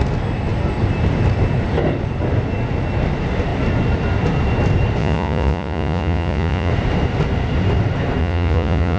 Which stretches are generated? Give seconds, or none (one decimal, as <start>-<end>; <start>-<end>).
5.0-6.7; 8.2-9.0